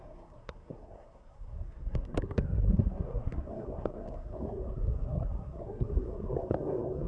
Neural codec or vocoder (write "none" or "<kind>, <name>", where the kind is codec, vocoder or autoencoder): codec, SNAC